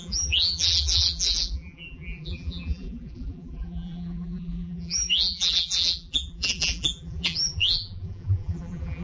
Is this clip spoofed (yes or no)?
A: yes